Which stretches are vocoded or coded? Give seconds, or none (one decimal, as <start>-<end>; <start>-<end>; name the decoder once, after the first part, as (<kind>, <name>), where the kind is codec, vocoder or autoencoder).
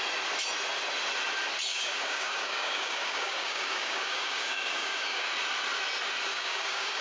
1.7-5.3 (codec, DAC); 6.3-7.0